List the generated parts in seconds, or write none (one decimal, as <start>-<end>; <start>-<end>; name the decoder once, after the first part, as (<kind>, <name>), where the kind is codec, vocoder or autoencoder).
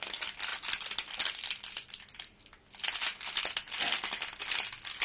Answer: none